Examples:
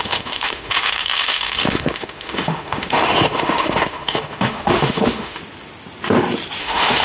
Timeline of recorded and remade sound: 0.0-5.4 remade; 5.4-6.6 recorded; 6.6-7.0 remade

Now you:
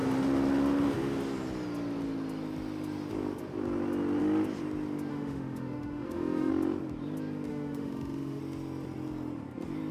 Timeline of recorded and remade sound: 0.0-5.1 recorded; 5.1-6.5 remade; 6.5-7.5 recorded; 7.5-8.4 remade; 8.4-9.9 recorded

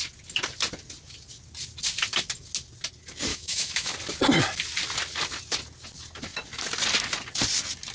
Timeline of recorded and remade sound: 0.0-3.3 recorded; 3.3-3.9 remade; 3.9-7.9 recorded

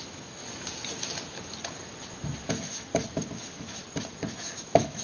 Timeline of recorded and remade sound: 0.0-0.4 remade; 0.4-2.5 recorded; 2.5-2.9 remade; 2.9-3.4 recorded; 3.4-3.8 remade; 3.8-4.3 recorded; 4.3-5.0 remade